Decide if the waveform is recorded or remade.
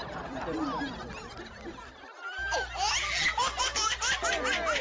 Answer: recorded